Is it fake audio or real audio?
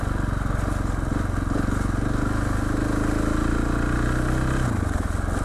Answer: real